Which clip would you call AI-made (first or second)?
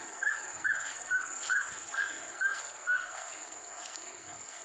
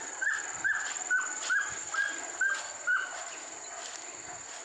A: first